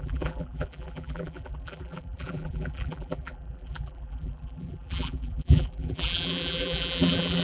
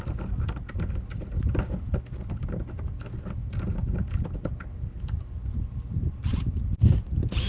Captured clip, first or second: second